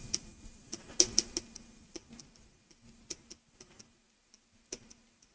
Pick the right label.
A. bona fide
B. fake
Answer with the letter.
A